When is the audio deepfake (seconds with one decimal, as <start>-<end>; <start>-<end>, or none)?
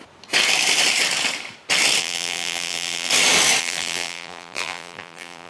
2.0-3.1; 3.6-5.5